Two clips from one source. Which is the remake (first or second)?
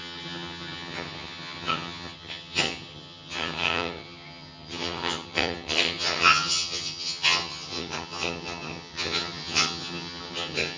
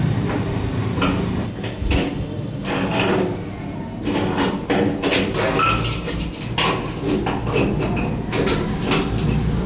first